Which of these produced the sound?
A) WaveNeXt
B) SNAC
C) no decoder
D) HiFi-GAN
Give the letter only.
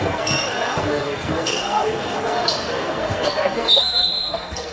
B